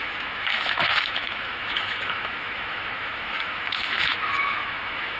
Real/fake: fake